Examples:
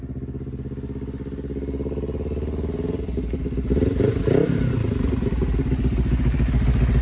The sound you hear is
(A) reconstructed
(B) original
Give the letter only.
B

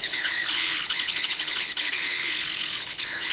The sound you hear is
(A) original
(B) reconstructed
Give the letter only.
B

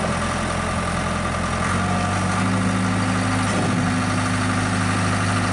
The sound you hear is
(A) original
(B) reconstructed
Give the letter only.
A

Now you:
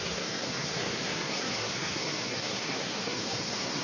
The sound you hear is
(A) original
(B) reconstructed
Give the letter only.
B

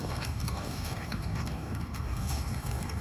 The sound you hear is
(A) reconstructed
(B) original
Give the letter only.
A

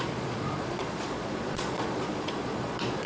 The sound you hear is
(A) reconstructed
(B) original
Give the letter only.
A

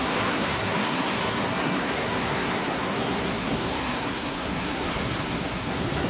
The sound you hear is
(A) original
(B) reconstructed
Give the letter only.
B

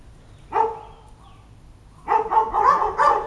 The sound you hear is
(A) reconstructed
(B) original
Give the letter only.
B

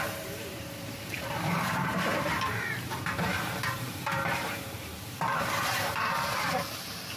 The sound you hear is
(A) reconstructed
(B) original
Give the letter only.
A